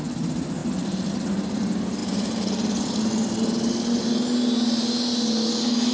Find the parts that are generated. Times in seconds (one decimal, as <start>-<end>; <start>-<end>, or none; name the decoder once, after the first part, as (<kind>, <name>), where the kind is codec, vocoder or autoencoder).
none